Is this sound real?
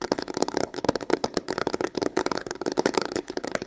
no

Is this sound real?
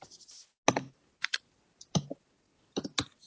yes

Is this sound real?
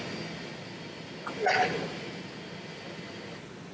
yes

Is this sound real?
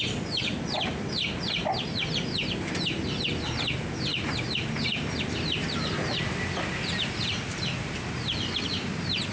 yes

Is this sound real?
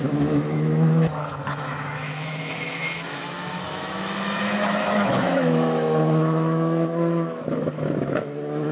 no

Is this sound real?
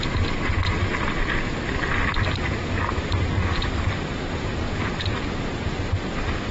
yes